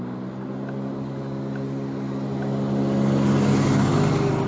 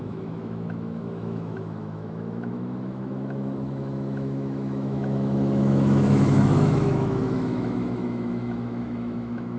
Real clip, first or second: first